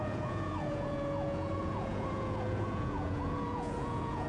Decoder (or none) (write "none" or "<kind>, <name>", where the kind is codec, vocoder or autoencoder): vocoder, Vocos